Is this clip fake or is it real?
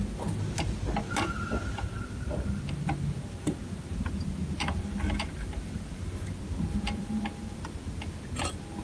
real